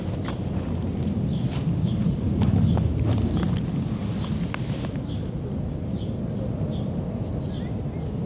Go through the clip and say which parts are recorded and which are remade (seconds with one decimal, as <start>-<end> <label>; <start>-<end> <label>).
0.0-8.3 recorded

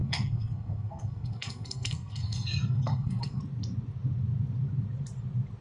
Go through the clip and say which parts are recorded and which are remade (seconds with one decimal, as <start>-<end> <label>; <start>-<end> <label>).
0.0-3.4 remade; 3.4-5.6 recorded

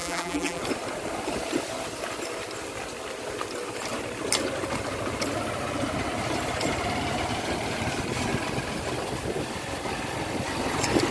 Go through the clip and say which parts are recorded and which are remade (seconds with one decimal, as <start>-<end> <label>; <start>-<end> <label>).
0.0-0.6 remade; 0.6-11.1 recorded

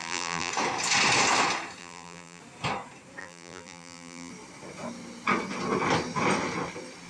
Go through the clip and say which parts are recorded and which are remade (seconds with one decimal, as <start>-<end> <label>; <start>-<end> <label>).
0.0-0.5 remade; 0.5-1.8 recorded; 1.8-2.4 remade; 2.4-3.2 recorded; 3.2-4.3 remade; 4.3-7.1 recorded